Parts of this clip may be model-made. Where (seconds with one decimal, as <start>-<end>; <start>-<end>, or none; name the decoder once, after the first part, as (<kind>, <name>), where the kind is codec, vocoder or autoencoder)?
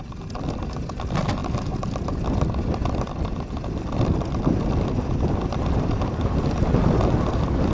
none